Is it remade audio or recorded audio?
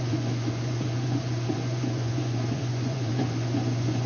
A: remade